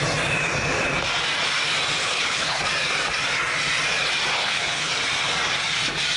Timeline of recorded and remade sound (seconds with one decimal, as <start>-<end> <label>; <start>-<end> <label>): 0.0-2.0 recorded; 2.0-2.6 remade; 2.6-4.3 recorded; 4.3-4.9 remade; 4.9-6.2 recorded

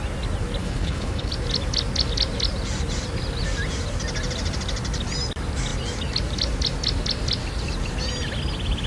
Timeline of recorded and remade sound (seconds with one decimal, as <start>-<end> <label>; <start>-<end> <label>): 0.0-0.6 recorded; 0.6-1.3 remade; 1.3-8.9 recorded